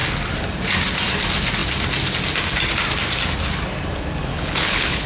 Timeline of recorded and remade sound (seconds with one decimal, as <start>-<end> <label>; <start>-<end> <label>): 0.0-4.3 recorded; 4.3-5.1 remade